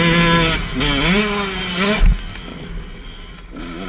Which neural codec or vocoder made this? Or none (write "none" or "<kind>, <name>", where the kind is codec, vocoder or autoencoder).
none